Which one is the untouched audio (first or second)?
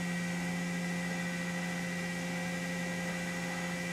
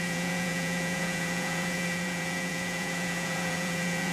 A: first